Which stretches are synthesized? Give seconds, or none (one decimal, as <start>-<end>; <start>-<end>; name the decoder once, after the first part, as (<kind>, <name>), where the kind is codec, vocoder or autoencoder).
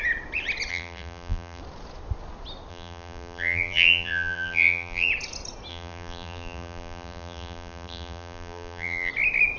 0.7-1.6 (vocoder, BigVGAN v2); 2.7-5.1; 5.7-9.1